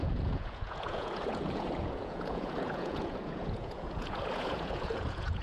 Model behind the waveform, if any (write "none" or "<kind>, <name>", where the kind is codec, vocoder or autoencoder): vocoder, Vocos